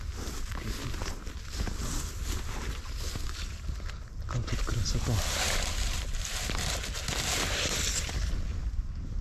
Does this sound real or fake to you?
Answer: real